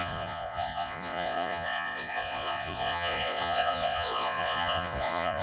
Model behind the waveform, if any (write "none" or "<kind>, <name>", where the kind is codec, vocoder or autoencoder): vocoder, Vocos